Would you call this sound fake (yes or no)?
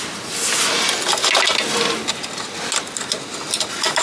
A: no